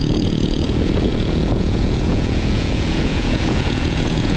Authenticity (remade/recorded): remade